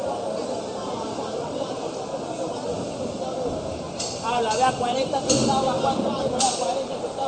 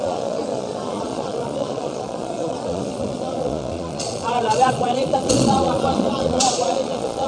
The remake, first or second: second